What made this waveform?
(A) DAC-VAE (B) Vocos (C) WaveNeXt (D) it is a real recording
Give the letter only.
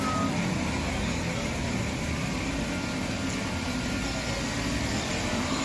D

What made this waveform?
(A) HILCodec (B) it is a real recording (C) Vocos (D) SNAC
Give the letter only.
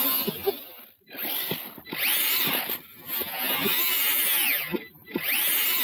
B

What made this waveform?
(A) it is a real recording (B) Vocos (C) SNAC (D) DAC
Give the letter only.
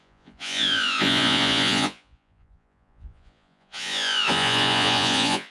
B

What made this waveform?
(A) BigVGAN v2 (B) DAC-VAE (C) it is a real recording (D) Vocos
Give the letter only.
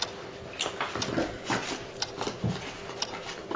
C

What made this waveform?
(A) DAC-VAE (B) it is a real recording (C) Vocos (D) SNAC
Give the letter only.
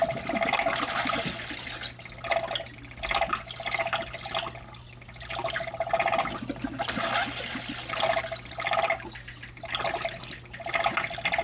B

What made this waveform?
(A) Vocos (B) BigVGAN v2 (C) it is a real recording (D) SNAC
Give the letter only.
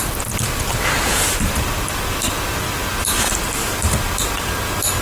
C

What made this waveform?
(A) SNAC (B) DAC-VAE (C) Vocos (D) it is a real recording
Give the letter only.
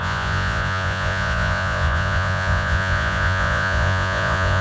C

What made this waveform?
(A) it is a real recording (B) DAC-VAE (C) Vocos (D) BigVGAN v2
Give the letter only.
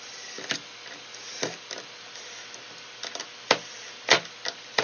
A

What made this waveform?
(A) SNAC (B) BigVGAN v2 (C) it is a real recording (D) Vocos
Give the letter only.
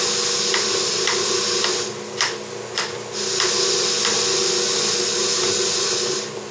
C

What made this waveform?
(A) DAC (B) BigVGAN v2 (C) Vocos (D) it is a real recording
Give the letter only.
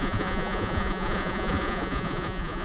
C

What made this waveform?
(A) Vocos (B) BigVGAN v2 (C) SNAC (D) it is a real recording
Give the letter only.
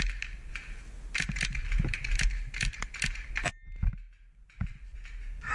D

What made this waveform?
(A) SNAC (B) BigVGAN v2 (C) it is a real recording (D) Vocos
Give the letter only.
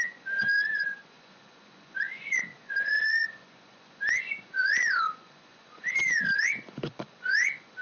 D